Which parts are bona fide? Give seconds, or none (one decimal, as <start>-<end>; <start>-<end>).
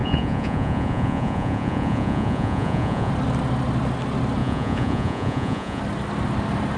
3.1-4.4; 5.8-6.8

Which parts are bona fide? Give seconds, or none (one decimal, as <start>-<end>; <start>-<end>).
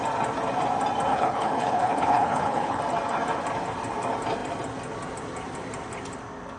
0.0-1.1; 2.8-6.6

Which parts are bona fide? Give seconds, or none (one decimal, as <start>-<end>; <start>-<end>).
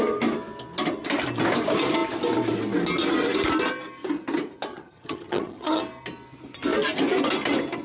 0.0-4.7; 5.8-7.8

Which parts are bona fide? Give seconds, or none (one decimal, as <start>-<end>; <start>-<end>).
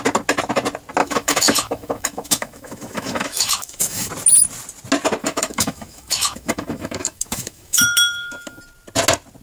0.0-1.0; 4.1-5.2; 8.6-9.4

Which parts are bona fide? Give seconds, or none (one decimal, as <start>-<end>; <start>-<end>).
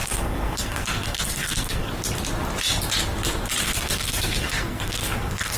1.9-3.6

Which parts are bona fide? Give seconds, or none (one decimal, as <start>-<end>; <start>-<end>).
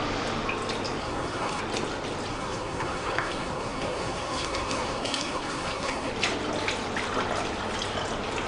0.0-1.0; 1.6-2.3; 6.1-8.5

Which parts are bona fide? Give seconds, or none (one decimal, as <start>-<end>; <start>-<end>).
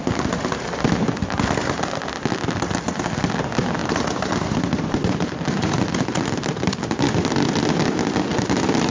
0.0-3.8; 6.0-8.9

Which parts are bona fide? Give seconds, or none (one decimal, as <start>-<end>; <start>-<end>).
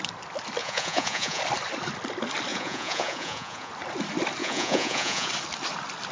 0.0-0.6; 1.4-2.5; 3.7-4.4; 5.3-6.1